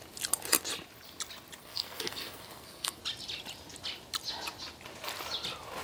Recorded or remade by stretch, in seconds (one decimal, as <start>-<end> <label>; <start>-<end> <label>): 0.0-1.6 recorded; 1.6-3.0 remade; 3.0-5.8 recorded